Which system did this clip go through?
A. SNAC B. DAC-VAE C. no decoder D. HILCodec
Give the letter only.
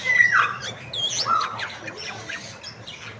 C